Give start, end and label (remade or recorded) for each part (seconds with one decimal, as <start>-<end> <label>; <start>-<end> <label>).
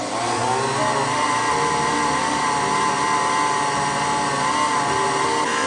0.0-5.7 recorded